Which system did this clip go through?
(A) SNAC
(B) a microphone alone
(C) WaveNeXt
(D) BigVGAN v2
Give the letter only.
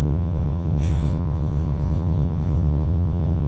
C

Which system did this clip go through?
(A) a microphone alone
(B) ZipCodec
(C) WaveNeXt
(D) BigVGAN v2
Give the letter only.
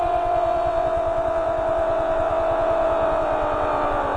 C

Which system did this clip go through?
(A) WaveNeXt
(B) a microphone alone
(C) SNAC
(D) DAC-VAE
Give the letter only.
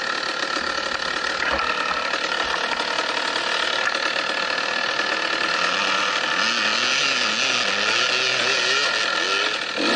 B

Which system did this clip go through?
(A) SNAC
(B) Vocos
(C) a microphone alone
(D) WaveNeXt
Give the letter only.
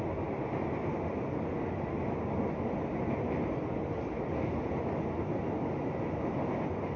C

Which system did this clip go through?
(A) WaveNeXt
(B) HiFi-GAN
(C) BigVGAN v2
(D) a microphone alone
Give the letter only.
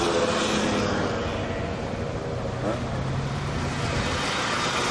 D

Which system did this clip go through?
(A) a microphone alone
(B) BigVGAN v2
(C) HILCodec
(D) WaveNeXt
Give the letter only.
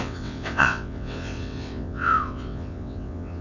D